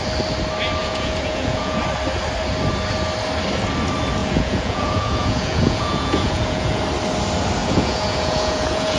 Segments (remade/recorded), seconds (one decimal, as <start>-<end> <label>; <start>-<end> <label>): 0.0-0.8 recorded; 0.8-1.8 remade; 1.8-4.2 recorded; 4.2-6.8 remade; 6.8-7.6 recorded; 7.6-9.0 remade